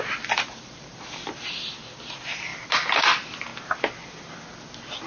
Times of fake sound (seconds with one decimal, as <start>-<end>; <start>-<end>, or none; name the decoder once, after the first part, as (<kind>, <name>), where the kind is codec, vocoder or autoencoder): none

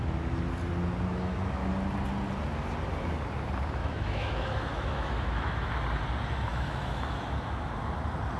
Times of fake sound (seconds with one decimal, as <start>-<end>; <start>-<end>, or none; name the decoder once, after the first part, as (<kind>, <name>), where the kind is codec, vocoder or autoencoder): 1.1-1.7 (autoencoder, DAC-VAE); 3.8-5.7; 6.5-7.7

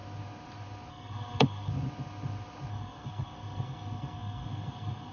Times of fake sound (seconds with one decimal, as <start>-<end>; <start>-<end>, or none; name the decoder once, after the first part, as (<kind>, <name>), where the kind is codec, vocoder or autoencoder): 0.9-1.7 (codec, SNAC); 2.7-5.1

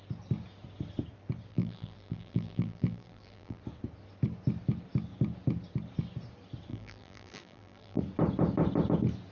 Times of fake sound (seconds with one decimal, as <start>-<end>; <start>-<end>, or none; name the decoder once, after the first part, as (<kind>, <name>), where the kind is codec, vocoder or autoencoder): 1.5-3.6 (vocoder, BigVGAN v2); 6.7-8.0